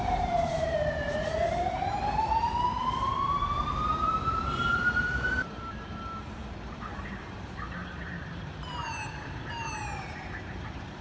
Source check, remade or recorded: remade